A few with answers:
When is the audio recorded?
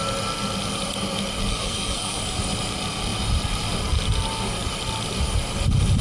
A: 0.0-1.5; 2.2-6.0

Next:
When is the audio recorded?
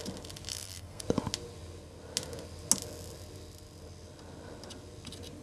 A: 0.0-0.5; 1.0-5.4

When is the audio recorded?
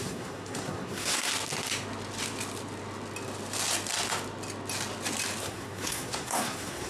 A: 1.3-5.4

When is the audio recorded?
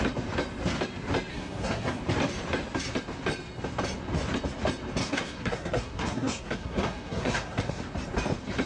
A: 0.0-1.3; 2.0-5.0; 7.8-8.7